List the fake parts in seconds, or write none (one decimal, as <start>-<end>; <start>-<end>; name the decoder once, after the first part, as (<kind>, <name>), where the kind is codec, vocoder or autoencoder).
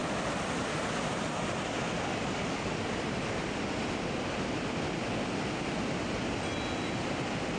2.1-2.6 (codec, DAC)